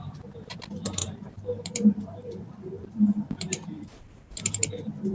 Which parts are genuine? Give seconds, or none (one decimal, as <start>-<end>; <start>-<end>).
none